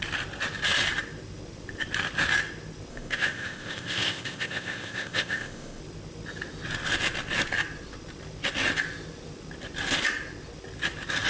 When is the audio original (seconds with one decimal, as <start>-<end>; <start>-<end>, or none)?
0.0-2.9; 5.8-11.3

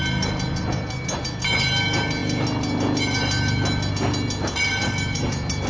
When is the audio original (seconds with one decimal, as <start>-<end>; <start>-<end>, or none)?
0.0-5.7

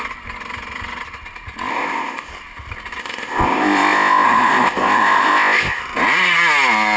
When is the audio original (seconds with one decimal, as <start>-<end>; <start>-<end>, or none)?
0.0-1.7; 2.3-3.0; 5.8-7.0

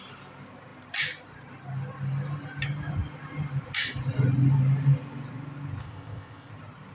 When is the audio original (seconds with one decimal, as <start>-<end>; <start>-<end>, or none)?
0.0-5.8; 6.5-6.9

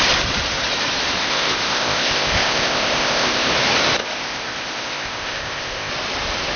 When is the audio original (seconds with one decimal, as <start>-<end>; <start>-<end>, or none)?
0.0-1.2; 3.5-4.0; 5.9-6.6

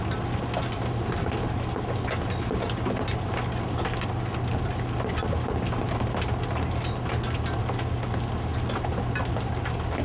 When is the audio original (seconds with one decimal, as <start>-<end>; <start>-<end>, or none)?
0.0-10.0

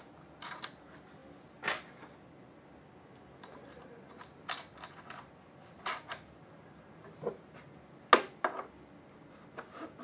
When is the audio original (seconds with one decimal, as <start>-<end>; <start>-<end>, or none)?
0.0-10.0

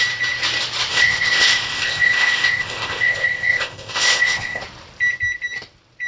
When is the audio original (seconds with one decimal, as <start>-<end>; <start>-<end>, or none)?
0.0-0.9; 4.6-6.1